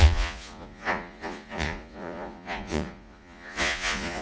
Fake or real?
fake